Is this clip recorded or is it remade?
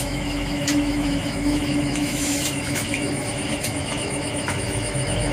remade